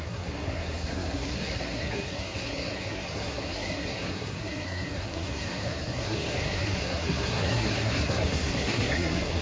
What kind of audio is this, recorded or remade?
remade